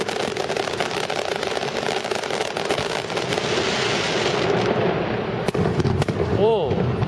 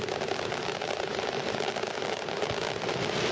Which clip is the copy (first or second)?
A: first